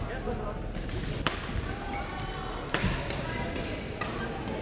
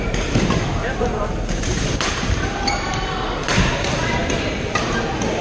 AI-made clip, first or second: second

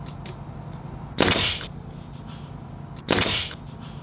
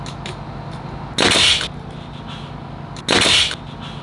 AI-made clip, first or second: first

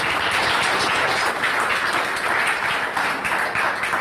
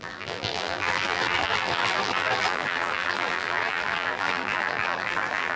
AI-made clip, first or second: second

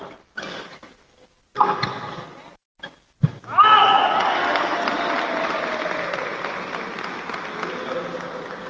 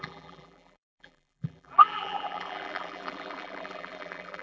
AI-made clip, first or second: second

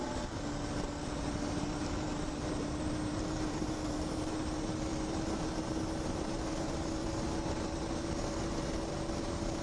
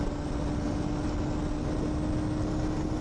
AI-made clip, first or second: first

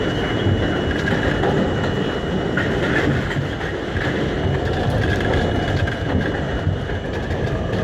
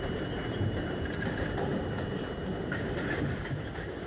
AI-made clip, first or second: second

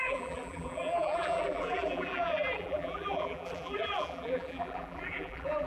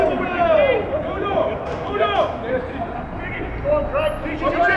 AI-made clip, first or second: first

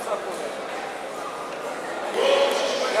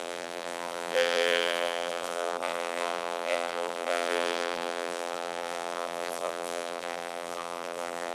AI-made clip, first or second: second